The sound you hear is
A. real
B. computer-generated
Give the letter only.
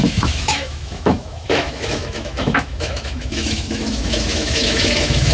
B